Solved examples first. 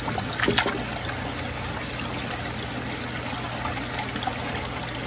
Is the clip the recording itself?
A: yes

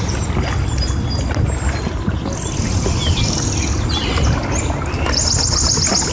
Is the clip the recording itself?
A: yes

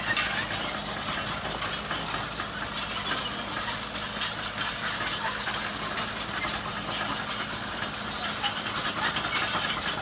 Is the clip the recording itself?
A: yes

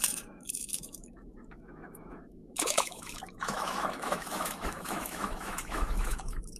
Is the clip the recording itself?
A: no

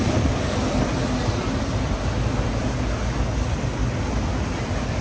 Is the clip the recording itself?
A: yes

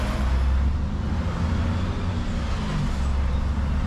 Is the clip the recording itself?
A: yes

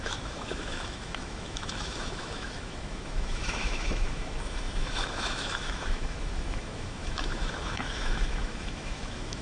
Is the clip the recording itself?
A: no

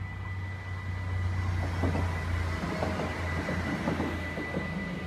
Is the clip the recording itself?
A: yes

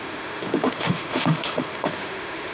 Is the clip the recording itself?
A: no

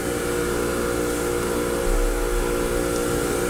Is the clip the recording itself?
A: yes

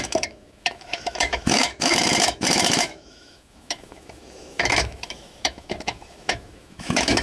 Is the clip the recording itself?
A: no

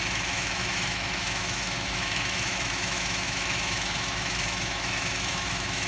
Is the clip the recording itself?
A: no